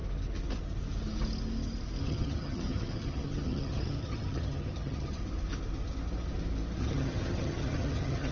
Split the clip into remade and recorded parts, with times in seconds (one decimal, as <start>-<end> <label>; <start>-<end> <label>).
0.0-2.0 recorded; 2.0-5.2 remade; 5.2-6.8 recorded; 6.8-8.3 remade

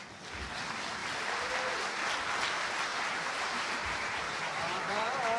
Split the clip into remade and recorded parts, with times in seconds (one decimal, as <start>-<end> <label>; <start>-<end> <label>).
0.0-2.9 recorded; 2.9-4.5 remade; 4.5-5.4 recorded

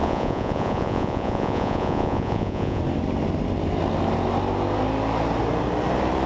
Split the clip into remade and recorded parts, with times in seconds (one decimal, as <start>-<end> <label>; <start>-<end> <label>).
0.0-2.8 remade; 2.8-6.3 recorded

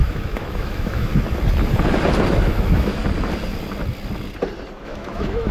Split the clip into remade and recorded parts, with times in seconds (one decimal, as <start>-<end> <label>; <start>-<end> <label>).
0.0-1.1 remade; 1.1-2.5 recorded; 2.5-3.0 remade; 3.0-4.8 recorded; 4.8-5.5 remade

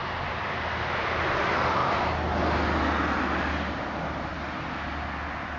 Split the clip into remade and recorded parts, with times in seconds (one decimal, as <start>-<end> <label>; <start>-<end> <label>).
0.0-5.6 recorded